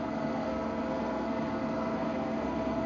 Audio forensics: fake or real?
fake